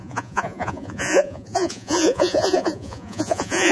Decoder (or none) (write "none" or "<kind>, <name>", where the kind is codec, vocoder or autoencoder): vocoder, Vocos